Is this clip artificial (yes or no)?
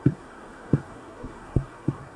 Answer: yes